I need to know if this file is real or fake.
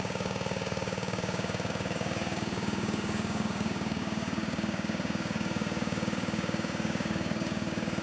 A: fake